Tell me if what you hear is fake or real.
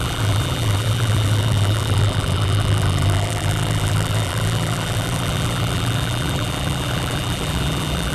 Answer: fake